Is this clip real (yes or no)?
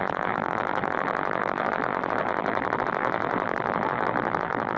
no